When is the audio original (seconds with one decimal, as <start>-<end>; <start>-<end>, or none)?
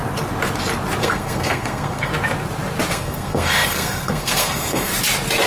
0.0-1.0; 2.1-2.9; 4.9-5.5